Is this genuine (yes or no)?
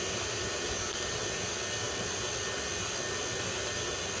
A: yes